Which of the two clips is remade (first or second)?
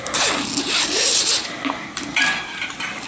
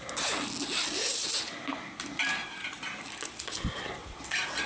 first